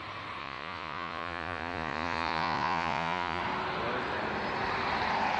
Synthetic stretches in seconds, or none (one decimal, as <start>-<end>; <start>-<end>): 0.4-3.4

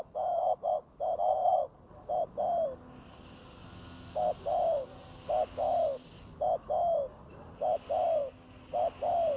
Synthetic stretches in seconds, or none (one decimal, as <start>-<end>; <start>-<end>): none